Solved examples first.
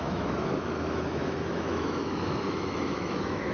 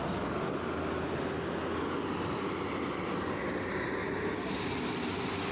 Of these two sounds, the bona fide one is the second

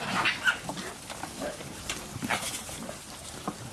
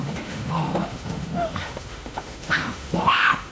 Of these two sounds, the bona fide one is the first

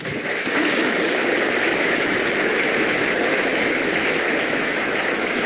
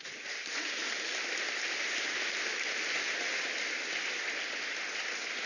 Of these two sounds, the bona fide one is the second